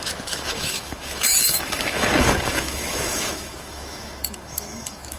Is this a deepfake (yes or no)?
yes